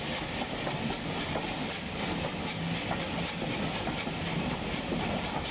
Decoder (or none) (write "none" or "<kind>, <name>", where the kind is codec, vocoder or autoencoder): none